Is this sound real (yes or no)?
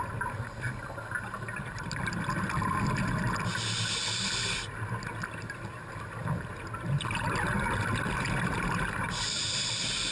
yes